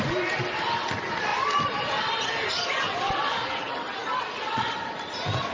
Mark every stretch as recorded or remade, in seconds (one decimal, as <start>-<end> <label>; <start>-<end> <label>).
0.0-5.5 recorded